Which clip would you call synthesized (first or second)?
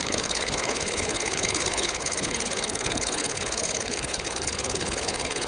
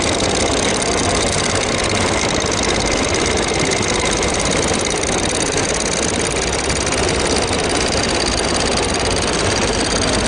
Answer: first